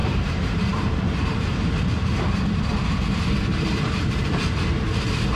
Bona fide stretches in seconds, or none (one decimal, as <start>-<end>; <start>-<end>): 3.2-3.7; 4.3-5.4